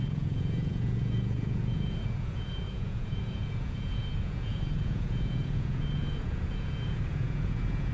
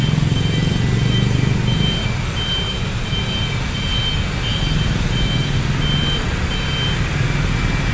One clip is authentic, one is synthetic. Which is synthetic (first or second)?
first